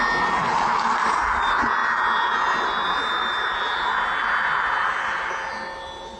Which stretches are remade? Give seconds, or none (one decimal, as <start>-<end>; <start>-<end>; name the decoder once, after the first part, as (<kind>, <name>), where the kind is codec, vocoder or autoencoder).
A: none